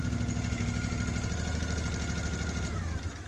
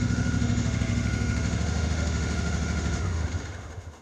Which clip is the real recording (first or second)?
first